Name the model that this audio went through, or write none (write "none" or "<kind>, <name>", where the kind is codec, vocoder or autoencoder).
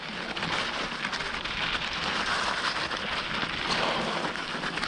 none